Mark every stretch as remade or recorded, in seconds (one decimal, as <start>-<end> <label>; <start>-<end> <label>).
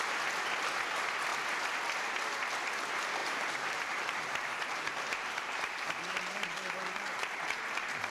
0.0-3.2 recorded; 3.2-8.1 remade